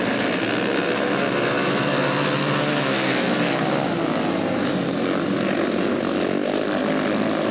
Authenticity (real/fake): real